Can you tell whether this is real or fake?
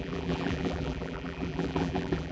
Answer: fake